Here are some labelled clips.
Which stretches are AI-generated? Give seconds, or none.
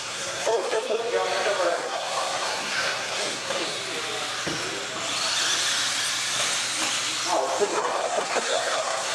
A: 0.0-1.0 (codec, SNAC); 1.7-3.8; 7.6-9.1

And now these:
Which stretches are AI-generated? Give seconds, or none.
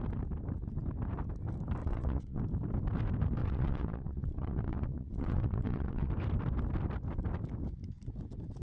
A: 1.8-2.4 (vocoder, WaveNeXt); 3.4-6.1